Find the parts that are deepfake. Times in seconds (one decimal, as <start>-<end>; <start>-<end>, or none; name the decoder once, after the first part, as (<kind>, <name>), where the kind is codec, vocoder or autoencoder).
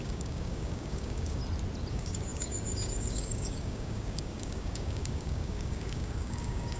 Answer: 0.0-1.4 (codec, DAC); 1.9-6.8